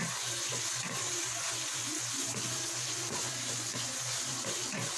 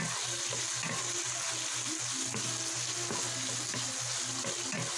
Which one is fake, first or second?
first